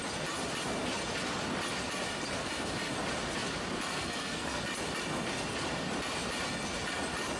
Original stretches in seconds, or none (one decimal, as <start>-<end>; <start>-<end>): 0.0-2.4; 2.9-3.9; 4.6-7.4